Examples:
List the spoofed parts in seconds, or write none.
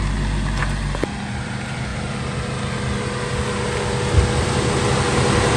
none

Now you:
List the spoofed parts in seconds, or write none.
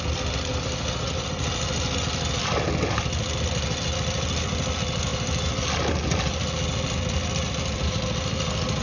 none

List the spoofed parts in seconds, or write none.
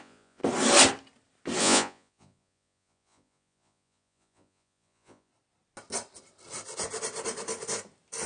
0.0-0.4 (vocoder, Vocos); 1.6-5.3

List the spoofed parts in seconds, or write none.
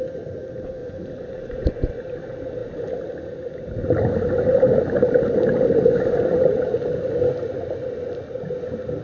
0.8-1.9 (vocoder, Vocos)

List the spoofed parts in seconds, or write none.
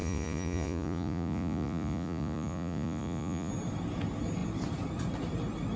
0.0-3.5 (vocoder, Vocos)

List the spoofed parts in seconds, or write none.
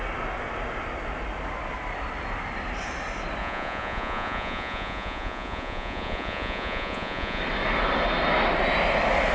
3.4-7.4 (vocoder, Vocos)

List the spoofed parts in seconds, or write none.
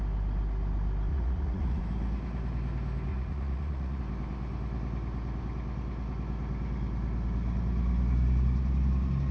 1.1-1.8 (vocoder, Vocos); 3.1-4.0